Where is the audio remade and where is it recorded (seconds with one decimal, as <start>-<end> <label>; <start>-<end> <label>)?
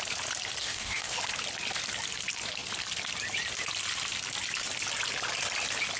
0.0-0.6 recorded; 0.6-1.2 remade; 1.2-6.0 recorded